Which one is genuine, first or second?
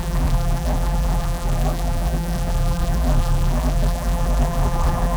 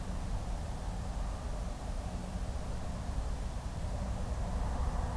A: second